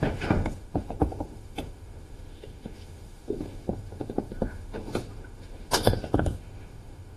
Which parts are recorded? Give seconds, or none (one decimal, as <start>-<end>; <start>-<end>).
none